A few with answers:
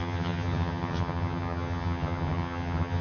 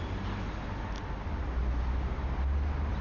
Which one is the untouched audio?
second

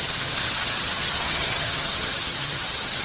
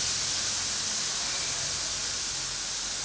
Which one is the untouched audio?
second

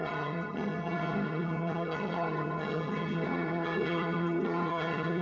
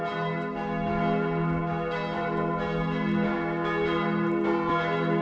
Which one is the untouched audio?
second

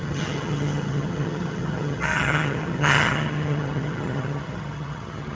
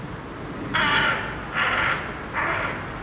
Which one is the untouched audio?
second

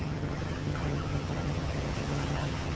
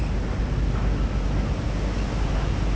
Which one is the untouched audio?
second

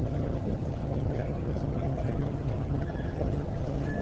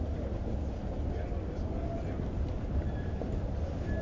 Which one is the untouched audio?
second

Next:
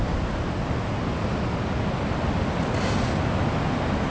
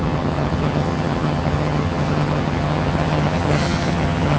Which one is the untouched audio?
first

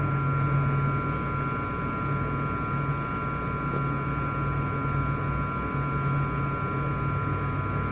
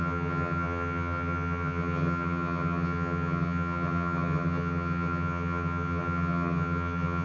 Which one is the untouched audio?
first